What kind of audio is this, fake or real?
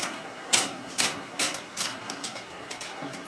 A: fake